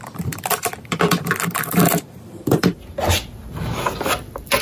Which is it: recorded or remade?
remade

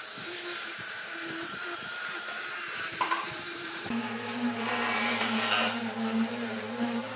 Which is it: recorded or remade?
remade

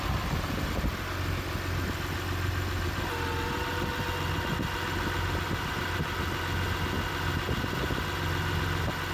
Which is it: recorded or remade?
recorded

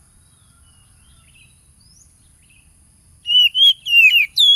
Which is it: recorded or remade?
remade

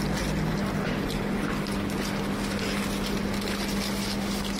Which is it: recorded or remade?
recorded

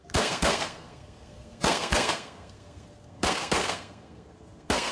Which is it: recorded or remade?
remade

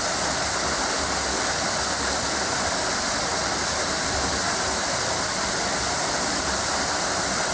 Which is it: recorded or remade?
recorded